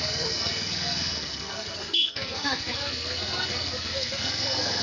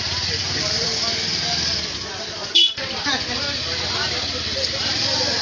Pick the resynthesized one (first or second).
first